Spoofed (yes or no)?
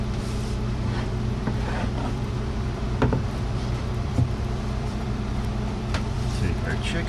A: yes